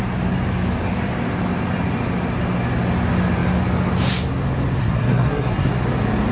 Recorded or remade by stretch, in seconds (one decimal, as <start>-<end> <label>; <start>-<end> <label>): 0.0-4.8 recorded; 4.8-5.7 remade; 5.7-6.3 recorded